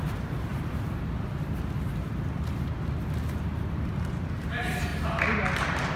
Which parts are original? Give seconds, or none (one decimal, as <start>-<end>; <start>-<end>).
0.5-4.1; 4.9-5.6